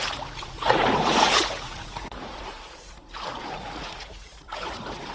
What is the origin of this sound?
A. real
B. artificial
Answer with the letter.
B